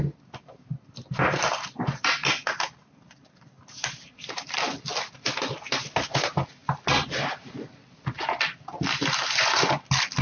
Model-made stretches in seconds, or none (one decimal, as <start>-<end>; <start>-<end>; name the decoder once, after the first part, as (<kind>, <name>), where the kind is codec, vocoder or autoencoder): none